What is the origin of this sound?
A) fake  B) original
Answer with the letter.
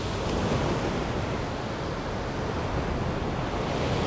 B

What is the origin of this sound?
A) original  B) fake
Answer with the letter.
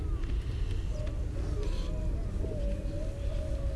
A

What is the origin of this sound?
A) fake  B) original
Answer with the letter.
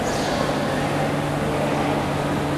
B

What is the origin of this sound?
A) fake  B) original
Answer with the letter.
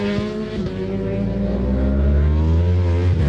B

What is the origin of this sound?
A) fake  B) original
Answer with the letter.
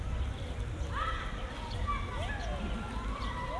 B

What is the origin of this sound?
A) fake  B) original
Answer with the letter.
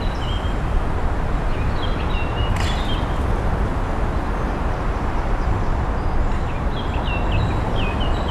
B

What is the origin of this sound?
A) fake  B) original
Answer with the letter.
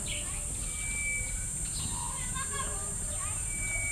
B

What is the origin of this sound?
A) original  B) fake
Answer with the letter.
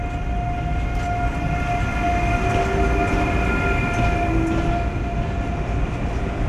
A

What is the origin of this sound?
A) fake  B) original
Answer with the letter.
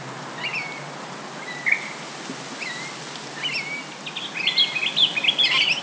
B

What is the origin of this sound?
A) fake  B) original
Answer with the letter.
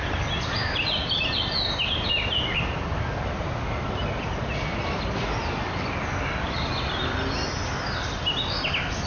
B